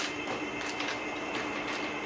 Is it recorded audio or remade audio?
recorded